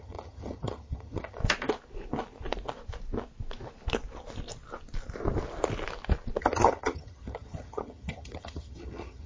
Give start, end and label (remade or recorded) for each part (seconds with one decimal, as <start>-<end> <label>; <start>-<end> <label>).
0.0-1.4 remade; 1.4-6.4 recorded; 6.4-9.3 remade